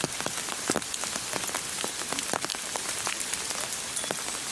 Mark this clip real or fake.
real